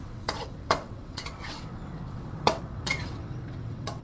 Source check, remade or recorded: remade